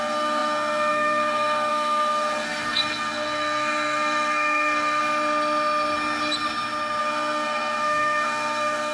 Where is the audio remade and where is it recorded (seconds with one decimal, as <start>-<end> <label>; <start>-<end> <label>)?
0.0-5.0 remade; 5.0-7.0 recorded; 7.0-8.9 remade